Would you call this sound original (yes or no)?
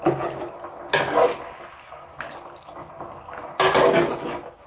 yes